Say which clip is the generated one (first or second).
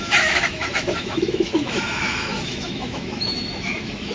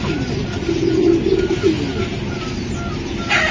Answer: first